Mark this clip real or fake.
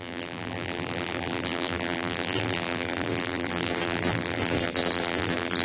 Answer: fake